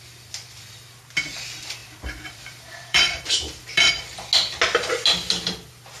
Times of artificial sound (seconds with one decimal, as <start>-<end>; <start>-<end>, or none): 1.8-3.9